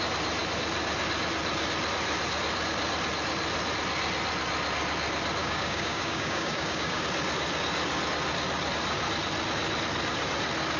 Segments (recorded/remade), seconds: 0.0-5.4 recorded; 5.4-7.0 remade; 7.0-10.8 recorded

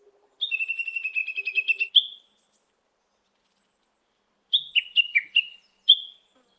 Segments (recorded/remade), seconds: 0.0-6.6 recorded

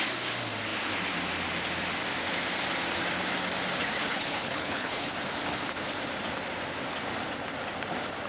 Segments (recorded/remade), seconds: 0.0-4.0 recorded; 4.0-5.1 remade; 5.1-8.3 recorded

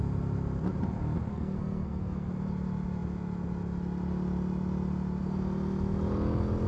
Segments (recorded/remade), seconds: 0.0-1.3 recorded; 1.3-2.3 remade; 2.3-6.7 recorded